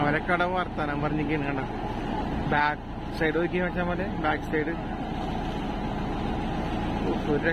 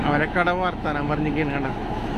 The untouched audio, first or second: first